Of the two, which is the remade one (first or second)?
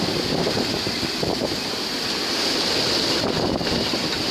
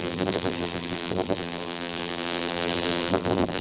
second